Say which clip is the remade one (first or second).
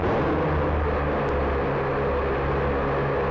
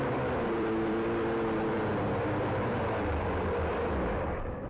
second